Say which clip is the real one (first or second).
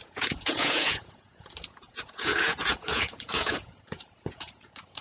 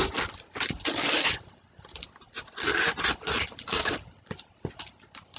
second